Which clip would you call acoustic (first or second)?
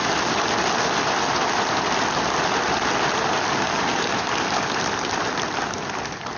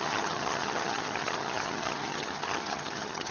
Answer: first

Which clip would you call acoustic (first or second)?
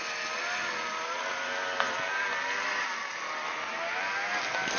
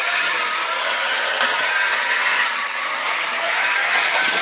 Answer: first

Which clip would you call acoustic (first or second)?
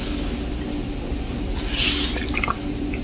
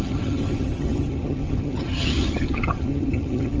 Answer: first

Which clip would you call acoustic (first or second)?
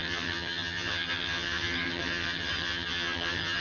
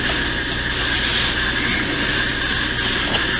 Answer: second